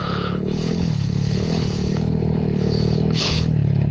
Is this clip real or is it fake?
fake